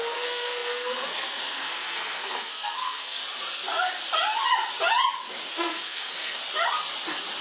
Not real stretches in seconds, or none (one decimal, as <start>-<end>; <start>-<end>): 0.0-3.2; 5.5-6.4